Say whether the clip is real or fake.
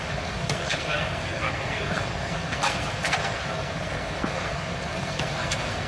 fake